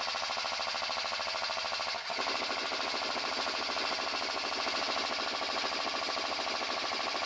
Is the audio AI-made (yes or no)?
no